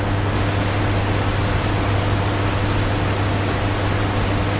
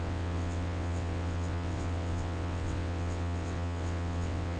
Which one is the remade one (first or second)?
second